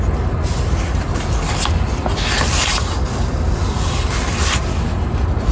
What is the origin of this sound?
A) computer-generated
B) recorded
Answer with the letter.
B